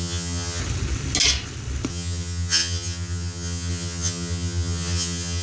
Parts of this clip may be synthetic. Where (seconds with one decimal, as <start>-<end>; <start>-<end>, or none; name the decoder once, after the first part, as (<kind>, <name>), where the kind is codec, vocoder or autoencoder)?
0.0-0.6 (vocoder, HiFi-GAN); 1.9-5.4